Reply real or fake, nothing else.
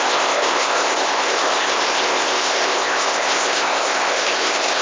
fake